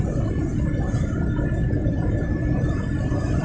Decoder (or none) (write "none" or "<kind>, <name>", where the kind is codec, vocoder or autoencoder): none